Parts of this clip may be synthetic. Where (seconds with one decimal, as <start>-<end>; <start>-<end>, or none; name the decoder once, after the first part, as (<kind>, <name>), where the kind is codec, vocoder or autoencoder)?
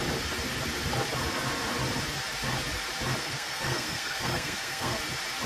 3.2-5.0 (codec, SNAC)